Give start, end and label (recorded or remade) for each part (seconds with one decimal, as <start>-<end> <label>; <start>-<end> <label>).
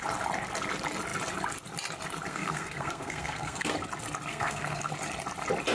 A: 0.0-2.3 recorded; 2.3-3.7 remade; 3.7-4.3 recorded; 4.3-4.9 remade; 4.9-5.7 recorded